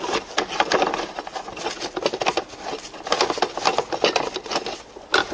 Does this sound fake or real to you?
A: real